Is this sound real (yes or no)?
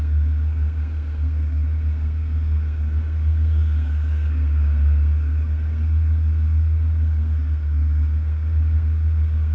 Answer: no